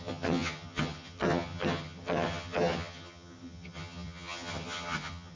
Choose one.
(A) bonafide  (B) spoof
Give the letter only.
B